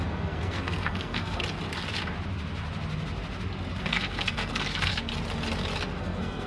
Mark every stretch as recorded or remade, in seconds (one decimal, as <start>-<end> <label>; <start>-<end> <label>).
0.0-1.4 remade; 1.4-3.8 recorded; 3.8-5.1 remade; 5.1-6.0 recorded; 6.0-6.5 remade